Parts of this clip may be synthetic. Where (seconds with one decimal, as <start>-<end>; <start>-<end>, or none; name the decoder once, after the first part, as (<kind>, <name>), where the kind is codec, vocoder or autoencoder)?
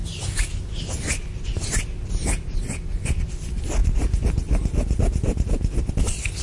none